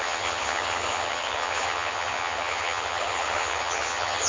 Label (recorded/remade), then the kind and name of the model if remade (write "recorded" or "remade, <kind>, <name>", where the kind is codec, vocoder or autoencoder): remade, vocoder, HiFi-GAN